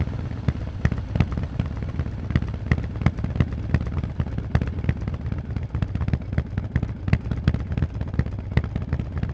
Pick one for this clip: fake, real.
real